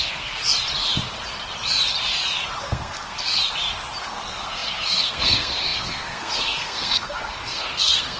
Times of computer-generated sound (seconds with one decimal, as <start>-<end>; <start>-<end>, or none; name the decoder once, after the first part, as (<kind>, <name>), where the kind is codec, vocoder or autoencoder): 0.0-0.4 (codec, SNAC); 2.6-3.4; 4.0-8.2